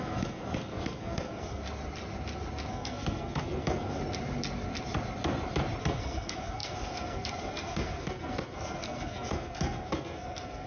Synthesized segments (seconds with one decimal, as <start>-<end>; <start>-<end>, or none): 0.0-1.6; 2.7-4.0; 5.8-10.7